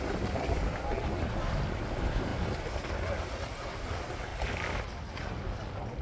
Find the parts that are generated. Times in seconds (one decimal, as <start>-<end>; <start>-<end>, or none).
none